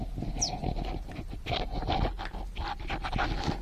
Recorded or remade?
recorded